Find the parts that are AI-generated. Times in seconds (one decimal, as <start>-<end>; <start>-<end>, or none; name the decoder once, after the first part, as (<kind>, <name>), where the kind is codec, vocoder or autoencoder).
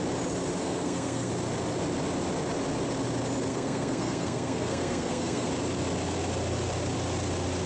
0.6-1.3 (codec, SNAC); 3.5-5.5